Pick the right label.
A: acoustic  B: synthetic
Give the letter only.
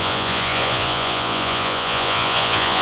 B